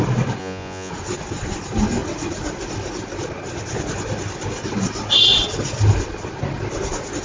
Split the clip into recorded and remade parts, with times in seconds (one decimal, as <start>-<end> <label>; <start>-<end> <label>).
0.0-0.4 recorded; 0.4-0.9 remade; 0.9-7.2 recorded